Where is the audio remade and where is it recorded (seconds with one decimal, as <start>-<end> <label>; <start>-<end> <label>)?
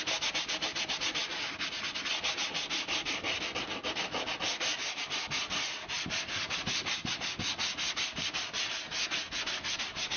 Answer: 0.0-10.2 recorded